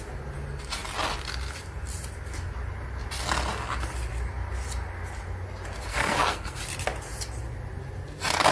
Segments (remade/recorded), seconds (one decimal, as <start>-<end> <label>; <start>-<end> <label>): 0.0-5.9 recorded; 5.9-6.6 remade; 6.6-8.5 recorded